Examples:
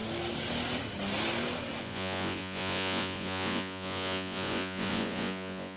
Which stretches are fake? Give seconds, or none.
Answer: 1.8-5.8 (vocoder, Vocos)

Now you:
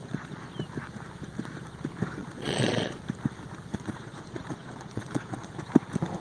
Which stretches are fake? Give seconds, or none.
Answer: 0.0-0.5 (vocoder, Vocos); 2.2-3.0; 3.7-5.5

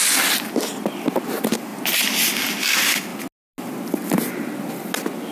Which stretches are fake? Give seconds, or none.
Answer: none